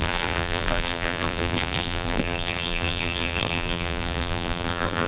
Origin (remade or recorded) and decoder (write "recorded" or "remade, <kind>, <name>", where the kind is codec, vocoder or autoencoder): remade, vocoder, BigVGAN v2